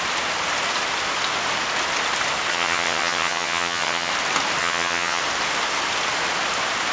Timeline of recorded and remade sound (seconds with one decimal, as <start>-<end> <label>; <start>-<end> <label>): 0.0-2.5 recorded; 2.5-4.1 remade; 4.1-4.6 recorded; 4.6-5.2 remade; 5.2-6.9 recorded